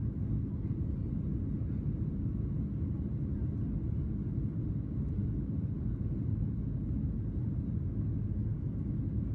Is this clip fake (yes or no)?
no